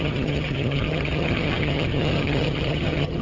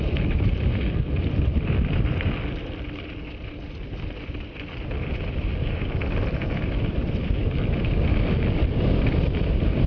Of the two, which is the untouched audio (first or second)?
second